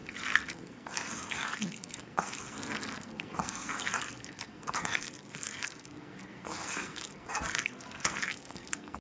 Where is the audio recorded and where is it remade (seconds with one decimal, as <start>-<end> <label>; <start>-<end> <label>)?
0.0-9.0 remade